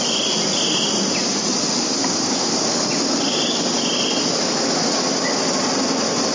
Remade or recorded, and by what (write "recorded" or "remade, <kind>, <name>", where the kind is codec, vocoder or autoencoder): recorded